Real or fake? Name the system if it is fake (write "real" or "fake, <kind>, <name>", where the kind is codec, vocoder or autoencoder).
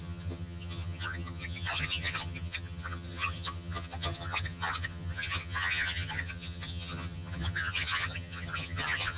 fake, vocoder, HiFi-GAN